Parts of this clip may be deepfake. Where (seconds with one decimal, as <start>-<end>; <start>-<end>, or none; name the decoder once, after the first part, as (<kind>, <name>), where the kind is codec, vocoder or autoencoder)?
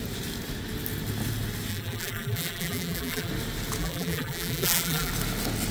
1.7-3.3 (vocoder, BigVGAN v2); 3.8-5.1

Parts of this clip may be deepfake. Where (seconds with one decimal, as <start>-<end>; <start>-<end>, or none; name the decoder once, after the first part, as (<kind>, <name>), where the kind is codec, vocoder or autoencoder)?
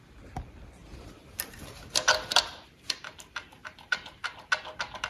0.8-3.9 (vocoder, BigVGAN v2)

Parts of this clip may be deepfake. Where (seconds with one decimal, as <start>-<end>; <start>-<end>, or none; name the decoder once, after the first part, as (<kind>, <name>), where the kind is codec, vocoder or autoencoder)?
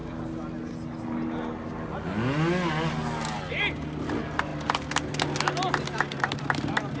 none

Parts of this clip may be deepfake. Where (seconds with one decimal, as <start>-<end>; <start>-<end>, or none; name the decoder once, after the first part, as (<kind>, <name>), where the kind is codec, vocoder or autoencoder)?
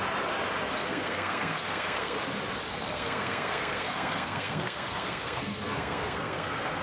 0.8-2.2 (codec, SNAC); 2.7-6.8